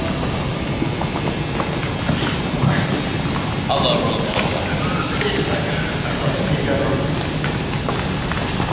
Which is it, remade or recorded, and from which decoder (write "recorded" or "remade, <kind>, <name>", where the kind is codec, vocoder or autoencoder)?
recorded